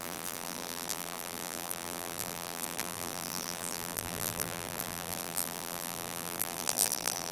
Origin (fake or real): fake